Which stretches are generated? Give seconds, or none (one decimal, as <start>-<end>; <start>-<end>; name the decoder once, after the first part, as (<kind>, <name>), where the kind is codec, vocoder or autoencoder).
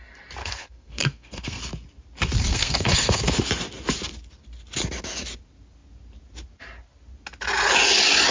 0.4-1.6 (codec, SNAC); 2.5-3.2